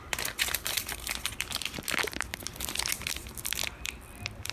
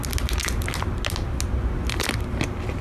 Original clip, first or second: second